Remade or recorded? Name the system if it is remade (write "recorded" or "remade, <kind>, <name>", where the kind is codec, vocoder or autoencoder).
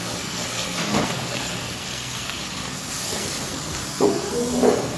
remade, codec, SNAC